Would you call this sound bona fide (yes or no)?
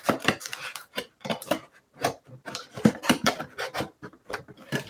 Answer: no